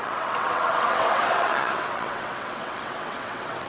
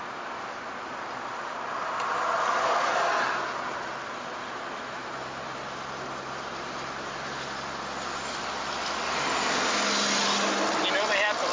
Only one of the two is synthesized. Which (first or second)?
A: first